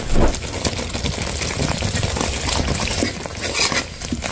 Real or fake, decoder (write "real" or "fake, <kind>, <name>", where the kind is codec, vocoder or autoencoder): real